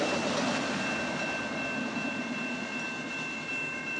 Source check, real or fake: real